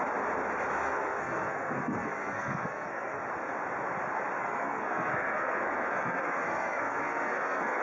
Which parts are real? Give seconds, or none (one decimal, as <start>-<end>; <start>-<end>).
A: 0.0-0.8; 3.2-4.4